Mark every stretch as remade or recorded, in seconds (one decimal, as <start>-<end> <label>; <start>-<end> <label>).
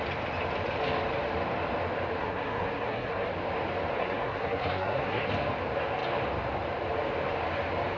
0.0-2.2 recorded; 2.2-3.3 remade; 3.3-4.0 recorded; 4.0-5.3 remade; 5.3-8.0 recorded